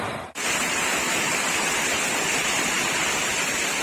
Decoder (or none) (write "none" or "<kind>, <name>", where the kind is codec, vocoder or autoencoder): none